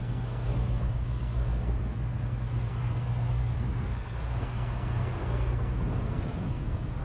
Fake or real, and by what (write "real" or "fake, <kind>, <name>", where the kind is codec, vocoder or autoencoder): fake, codec, SNAC